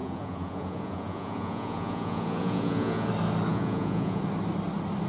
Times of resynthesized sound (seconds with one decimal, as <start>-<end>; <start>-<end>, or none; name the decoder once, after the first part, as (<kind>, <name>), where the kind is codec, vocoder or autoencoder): 0.0-3.1 (vocoder, Vocos); 3.5-4.2

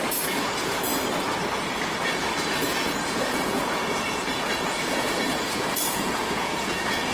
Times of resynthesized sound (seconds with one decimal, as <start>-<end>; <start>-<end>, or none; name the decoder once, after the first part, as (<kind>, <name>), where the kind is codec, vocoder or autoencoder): 0.0-0.9 (vocoder, Vocos); 2.5-7.1

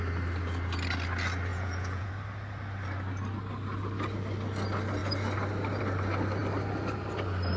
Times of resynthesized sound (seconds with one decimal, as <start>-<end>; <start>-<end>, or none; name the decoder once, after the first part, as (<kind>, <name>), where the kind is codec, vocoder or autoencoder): 1.5-2.1 (vocoder, Vocos)

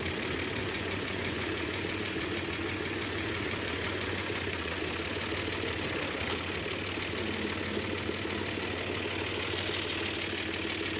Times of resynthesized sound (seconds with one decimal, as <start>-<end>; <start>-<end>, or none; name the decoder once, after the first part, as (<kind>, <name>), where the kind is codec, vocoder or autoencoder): 0.6-4.8 (vocoder, Vocos)

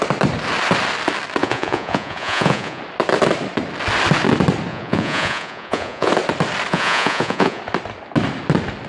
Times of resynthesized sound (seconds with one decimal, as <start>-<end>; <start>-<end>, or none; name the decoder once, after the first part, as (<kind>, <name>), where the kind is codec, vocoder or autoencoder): 1.4-2.8 (vocoder, Vocos); 4.7-6.1; 6.7-7.6